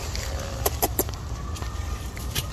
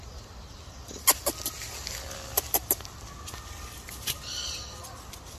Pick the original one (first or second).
second